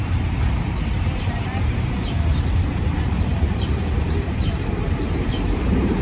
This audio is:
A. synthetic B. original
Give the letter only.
A